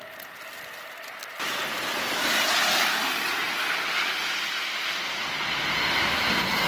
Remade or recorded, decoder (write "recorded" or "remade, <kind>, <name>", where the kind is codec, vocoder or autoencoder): recorded